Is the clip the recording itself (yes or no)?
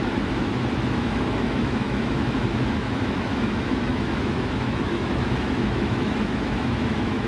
no